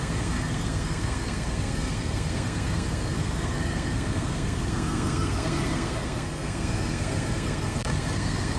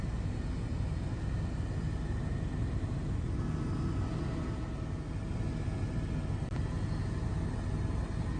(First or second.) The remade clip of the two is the first